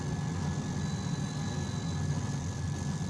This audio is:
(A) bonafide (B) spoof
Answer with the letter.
A